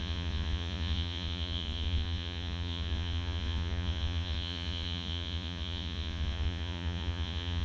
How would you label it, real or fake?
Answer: fake